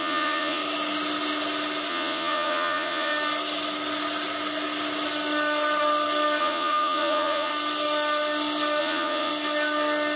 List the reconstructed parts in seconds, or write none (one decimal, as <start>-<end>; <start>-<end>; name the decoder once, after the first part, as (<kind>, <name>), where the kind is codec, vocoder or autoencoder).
0.0-0.6 (vocoder, Vocos); 1.9-3.1; 6.4-7.5; 8.8-9.3

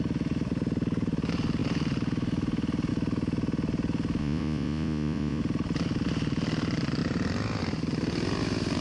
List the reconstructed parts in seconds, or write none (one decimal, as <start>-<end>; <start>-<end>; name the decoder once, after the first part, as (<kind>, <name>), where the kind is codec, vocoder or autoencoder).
4.2-5.4 (vocoder, Vocos)

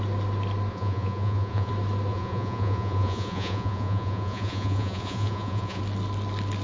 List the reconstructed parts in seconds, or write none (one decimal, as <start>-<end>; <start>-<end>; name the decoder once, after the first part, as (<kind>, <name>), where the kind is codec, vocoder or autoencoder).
0.7-1.7 (vocoder, Vocos); 2.1-5.8

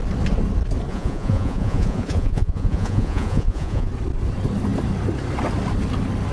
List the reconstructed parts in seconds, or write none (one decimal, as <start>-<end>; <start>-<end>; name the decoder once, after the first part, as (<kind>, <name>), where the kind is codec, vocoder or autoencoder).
0.9-3.9 (vocoder, Vocos)